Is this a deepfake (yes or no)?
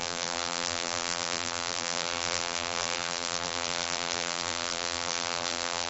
yes